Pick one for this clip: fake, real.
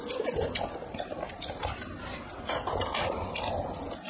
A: real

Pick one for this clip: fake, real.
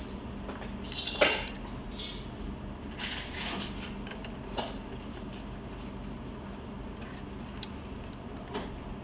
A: real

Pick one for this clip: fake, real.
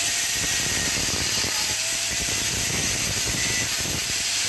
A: fake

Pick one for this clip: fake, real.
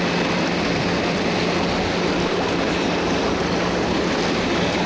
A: real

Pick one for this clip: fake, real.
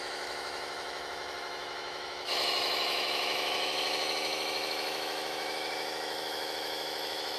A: fake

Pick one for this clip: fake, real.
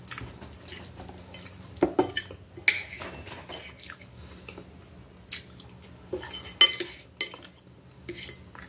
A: real